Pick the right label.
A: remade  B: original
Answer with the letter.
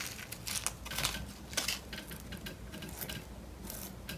B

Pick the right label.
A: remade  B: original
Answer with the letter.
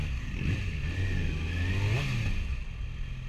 B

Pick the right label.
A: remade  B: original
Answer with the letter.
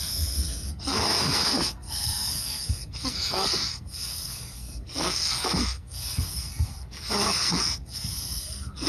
A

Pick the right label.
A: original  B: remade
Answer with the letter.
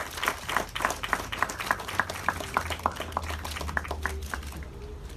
A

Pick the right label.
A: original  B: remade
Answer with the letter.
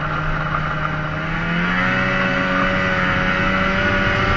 A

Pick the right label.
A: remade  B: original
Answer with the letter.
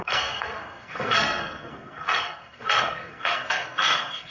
A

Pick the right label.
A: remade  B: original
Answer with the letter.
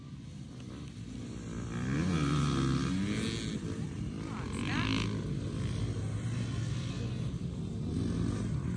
B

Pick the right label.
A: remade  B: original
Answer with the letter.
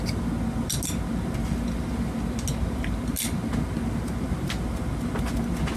B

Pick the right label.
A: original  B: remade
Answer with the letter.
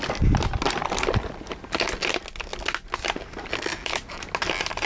A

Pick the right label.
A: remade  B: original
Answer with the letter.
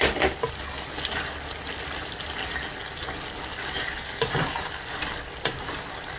B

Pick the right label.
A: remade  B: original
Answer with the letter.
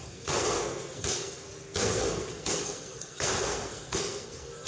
A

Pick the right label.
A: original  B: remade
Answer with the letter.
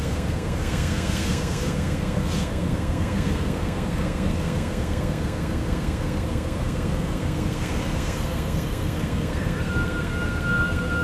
B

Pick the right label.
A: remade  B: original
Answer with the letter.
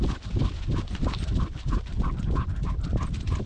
B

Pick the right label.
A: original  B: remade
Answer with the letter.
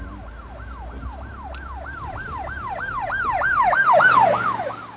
A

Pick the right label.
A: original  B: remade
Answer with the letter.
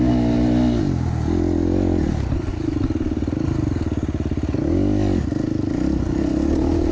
A